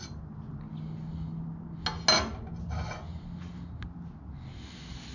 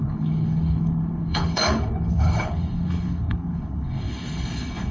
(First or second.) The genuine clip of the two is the first